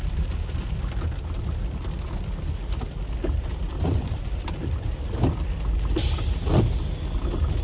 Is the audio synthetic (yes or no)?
no